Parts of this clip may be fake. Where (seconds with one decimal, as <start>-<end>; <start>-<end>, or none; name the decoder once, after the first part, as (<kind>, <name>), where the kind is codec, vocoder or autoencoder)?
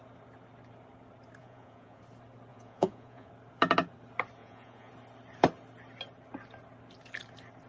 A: 1.4-2.0 (vocoder, Vocos); 2.5-3.3; 4.4-4.9